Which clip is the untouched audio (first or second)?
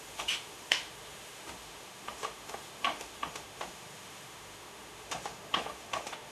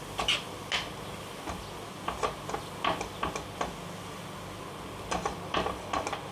second